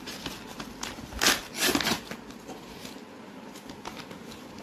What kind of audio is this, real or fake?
real